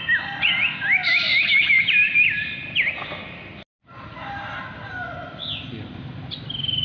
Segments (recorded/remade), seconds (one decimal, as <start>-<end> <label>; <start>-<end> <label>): 0.0-6.8 recorded